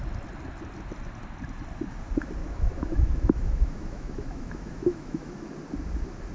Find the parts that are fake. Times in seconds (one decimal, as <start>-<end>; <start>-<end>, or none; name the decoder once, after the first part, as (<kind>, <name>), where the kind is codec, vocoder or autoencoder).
2.4-5.4 (autoencoder, DAC-VAE)